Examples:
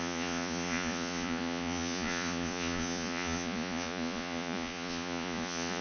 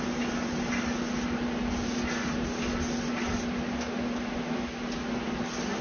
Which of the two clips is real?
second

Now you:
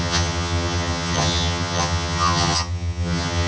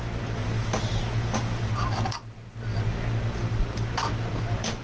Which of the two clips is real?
second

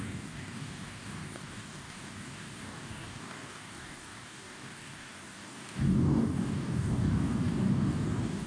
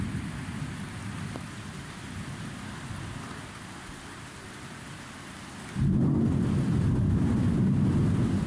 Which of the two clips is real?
second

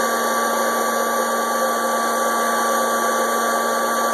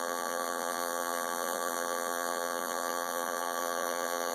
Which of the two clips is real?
first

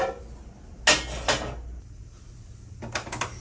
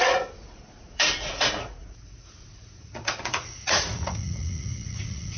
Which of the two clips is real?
first